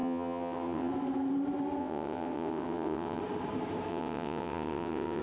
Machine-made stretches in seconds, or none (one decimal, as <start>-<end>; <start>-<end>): 0.0-0.9; 1.8-3.2; 3.9-5.2